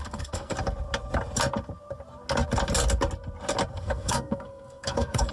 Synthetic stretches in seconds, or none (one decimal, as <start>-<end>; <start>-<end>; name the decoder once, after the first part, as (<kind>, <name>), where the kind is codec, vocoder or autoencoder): 0.0-0.5 (codec, SNAC); 3.7-5.3